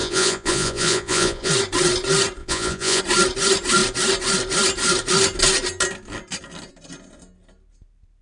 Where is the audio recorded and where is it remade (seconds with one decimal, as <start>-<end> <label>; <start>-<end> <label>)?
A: 0.0-1.5 remade; 1.5-2.4 recorded; 2.4-3.0 remade; 3.0-8.2 recorded